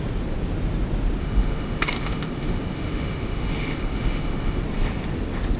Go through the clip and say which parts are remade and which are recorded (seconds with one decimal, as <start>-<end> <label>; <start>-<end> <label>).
0.0-1.2 recorded; 1.2-4.6 remade; 4.6-5.6 recorded

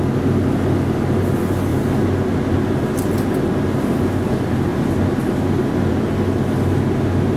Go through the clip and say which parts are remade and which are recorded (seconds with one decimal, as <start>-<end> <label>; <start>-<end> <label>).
0.0-7.4 recorded

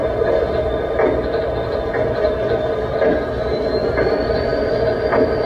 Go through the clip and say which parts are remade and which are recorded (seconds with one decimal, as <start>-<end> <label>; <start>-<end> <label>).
0.0-5.5 recorded